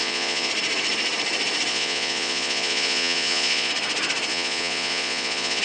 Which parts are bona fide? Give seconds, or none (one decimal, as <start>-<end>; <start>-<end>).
0.5-1.7; 3.7-4.3